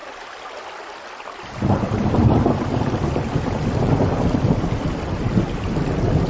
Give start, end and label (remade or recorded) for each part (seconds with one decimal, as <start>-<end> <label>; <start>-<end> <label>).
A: 0.0-6.3 recorded